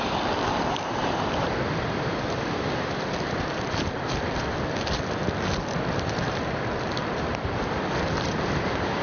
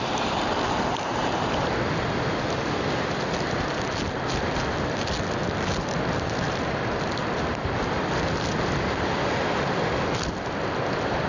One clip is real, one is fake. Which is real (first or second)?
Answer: second